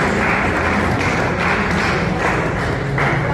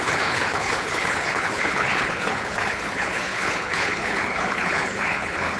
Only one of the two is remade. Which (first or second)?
second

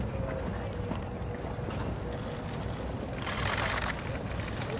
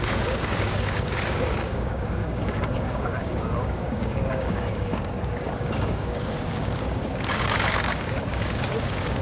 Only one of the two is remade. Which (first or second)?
second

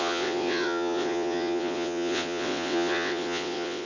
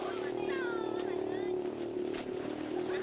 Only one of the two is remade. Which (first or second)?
first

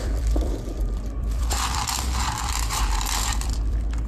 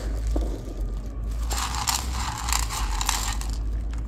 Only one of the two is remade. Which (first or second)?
first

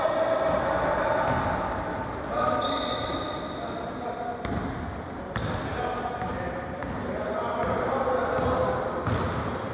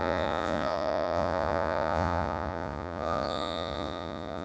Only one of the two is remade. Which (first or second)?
second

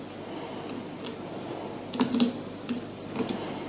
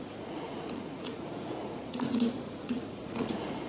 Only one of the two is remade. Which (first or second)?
second